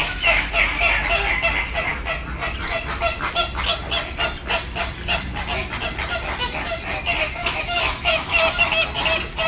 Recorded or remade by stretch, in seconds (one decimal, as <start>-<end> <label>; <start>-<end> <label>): 0.0-0.5 remade; 0.5-7.4 recorded; 7.4-8.4 remade; 8.4-9.5 recorded